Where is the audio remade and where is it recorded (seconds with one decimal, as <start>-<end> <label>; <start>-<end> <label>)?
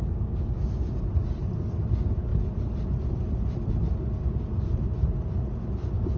0.0-6.2 recorded